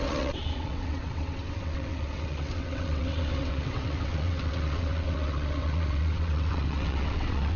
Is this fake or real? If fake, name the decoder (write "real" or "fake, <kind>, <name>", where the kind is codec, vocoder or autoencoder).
fake, vocoder, WaveNeXt